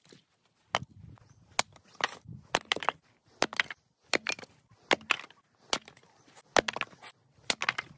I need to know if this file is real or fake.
real